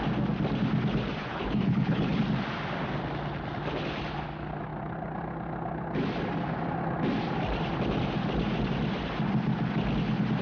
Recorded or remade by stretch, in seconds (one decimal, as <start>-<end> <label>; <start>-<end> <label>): 0.0-1.2 recorded; 1.2-2.2 remade; 2.2-10.4 recorded